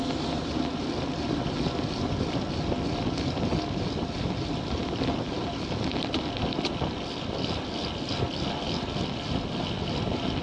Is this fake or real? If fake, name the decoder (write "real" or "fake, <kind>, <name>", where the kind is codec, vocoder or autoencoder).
real